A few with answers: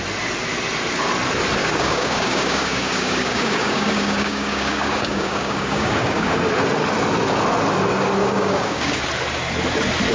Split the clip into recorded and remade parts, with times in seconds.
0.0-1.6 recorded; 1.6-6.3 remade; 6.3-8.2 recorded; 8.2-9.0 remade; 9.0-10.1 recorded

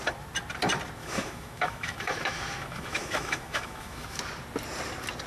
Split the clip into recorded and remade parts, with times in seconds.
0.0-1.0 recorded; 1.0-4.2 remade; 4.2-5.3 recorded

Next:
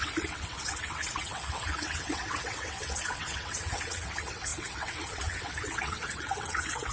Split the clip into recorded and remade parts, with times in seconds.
0.0-6.9 remade